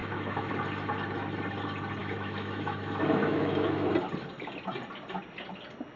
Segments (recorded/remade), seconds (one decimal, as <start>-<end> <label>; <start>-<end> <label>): 0.0-0.5 remade; 0.5-2.0 recorded; 2.0-3.9 remade; 3.9-6.0 recorded